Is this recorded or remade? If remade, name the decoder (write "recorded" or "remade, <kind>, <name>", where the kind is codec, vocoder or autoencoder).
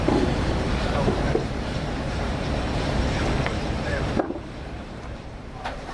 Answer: remade, vocoder, BigVGAN v2